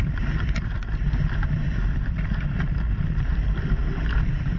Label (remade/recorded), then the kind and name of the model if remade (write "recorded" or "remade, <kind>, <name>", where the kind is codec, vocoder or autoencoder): remade, vocoder, BigVGAN v2